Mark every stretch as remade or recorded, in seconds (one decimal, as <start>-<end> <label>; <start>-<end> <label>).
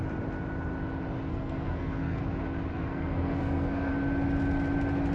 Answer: 0.0-1.3 recorded; 1.3-2.2 remade; 2.2-2.7 recorded; 2.7-3.9 remade; 3.9-5.1 recorded